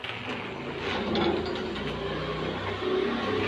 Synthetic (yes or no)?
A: no